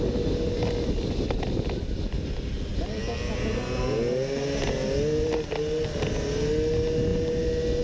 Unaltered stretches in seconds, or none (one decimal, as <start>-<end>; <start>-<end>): 0.0-7.8